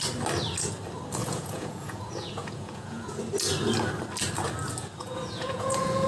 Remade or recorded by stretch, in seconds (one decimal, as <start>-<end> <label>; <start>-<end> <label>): 0.0-1.2 recorded; 1.2-3.2 remade; 3.2-5.0 recorded; 5.0-6.1 remade